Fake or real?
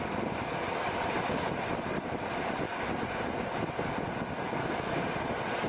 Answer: real